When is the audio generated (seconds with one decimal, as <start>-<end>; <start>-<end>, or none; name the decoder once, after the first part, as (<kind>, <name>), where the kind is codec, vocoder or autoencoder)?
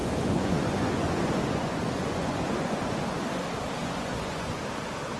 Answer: 0.0-3.1 (vocoder, Vocos); 3.8-4.6